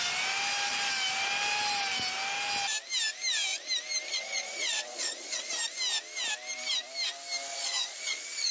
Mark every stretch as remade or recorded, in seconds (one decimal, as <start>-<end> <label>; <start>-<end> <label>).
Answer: 0.0-4.1 recorded; 4.1-5.5 remade; 5.5-7.5 recorded; 7.5-8.5 remade